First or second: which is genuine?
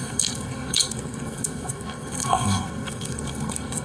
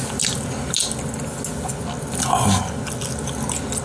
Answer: second